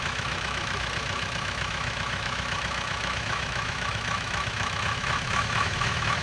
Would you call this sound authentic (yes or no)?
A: no